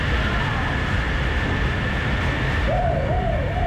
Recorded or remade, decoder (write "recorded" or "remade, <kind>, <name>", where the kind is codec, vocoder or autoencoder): recorded